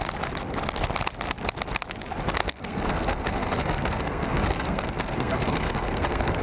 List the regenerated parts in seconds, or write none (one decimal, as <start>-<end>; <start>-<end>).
2.4-6.4